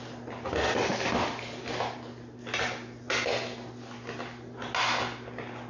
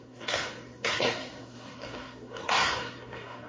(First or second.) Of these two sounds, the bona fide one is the first